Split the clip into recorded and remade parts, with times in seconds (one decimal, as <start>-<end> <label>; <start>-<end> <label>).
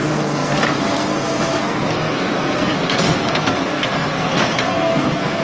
0.0-5.4 remade